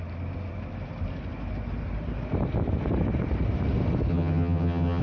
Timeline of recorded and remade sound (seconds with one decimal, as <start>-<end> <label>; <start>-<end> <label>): 0.0-4.1 recorded; 4.1-5.0 remade